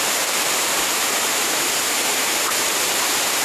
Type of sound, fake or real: fake